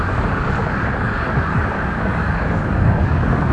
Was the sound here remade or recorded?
remade